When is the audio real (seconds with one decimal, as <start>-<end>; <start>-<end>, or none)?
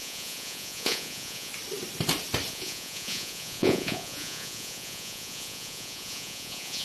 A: 1.5-2.5